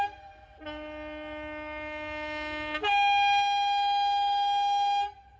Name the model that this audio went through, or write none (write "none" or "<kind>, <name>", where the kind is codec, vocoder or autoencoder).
none